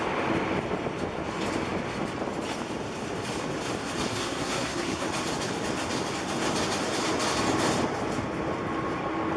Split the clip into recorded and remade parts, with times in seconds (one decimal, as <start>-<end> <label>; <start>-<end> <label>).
0.0-4.1 recorded; 4.1-5.1 remade; 5.1-9.4 recorded

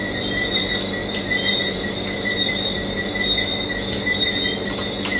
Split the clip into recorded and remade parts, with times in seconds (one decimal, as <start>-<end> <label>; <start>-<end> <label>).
0.0-1.0 recorded; 1.0-2.3 remade; 2.3-5.2 recorded

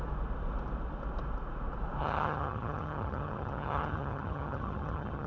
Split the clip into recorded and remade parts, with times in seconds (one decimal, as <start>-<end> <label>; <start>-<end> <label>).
0.0-2.0 recorded; 2.0-5.3 remade